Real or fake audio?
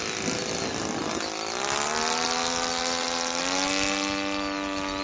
real